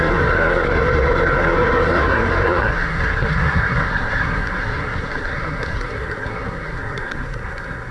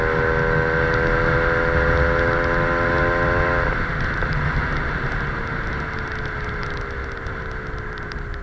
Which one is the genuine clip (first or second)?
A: second